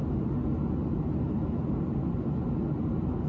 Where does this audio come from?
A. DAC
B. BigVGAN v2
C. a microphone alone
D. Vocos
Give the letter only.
C